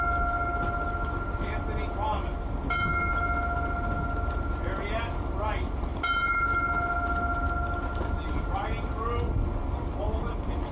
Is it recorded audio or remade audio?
recorded